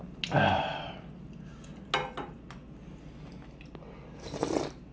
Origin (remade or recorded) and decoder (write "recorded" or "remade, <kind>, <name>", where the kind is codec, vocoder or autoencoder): recorded